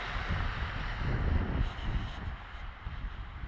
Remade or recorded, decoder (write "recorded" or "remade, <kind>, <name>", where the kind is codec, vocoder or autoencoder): recorded